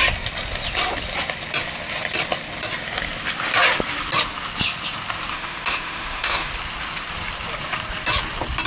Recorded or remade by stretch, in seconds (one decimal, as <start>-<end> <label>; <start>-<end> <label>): 0.0-5.3 recorded; 5.3-6.5 remade; 6.5-8.7 recorded